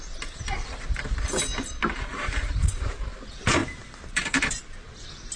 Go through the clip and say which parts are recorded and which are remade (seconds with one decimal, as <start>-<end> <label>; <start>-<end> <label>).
0.0-2.1 recorded; 2.1-2.9 remade; 2.9-3.6 recorded; 3.6-4.6 remade; 4.6-5.4 recorded